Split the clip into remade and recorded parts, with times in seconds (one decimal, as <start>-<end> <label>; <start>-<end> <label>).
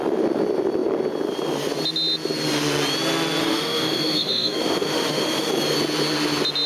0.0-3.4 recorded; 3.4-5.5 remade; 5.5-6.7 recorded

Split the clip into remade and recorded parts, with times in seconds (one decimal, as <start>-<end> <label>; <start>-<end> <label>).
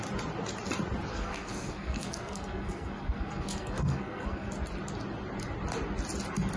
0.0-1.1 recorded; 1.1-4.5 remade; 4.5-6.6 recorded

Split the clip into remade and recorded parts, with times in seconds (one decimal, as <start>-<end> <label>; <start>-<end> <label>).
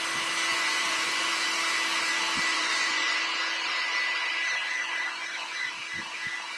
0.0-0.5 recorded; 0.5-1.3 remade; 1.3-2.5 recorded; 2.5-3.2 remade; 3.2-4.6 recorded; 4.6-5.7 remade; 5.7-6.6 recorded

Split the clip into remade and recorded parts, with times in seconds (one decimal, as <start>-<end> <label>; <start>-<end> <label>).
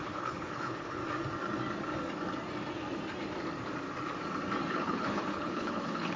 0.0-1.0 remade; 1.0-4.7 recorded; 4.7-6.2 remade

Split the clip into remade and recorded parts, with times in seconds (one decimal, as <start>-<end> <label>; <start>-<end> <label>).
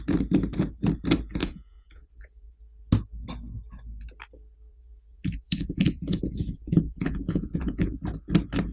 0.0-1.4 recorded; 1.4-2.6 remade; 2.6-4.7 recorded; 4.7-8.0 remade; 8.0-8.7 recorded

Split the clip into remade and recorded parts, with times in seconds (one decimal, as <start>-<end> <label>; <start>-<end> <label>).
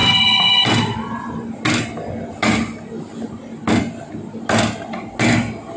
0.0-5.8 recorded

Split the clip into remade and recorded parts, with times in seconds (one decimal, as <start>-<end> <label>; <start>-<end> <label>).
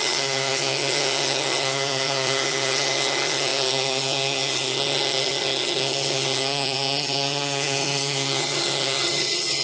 0.0-9.6 remade